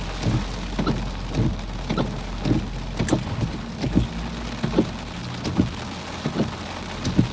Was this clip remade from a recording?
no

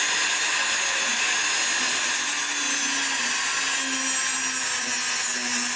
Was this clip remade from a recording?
no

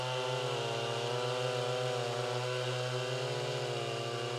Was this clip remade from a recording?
no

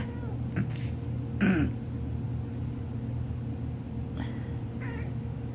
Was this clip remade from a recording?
no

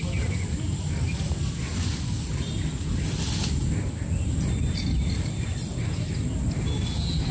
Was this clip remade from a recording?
no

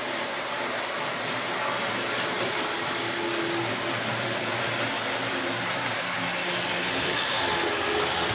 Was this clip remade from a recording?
no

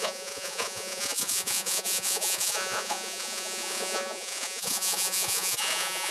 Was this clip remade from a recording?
yes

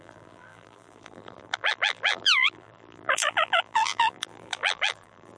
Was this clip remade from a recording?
yes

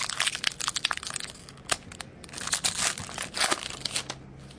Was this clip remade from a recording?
no